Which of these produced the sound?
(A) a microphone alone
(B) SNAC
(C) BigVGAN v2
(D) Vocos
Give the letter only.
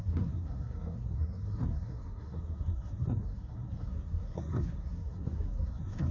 B